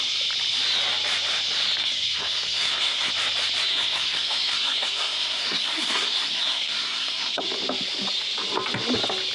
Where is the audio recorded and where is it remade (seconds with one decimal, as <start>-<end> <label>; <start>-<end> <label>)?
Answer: 0.0-1.8 recorded; 1.8-3.1 remade; 3.1-3.7 recorded; 3.7-7.4 remade; 7.4-9.3 recorded